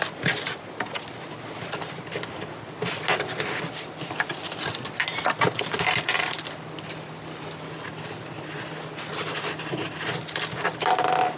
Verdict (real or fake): real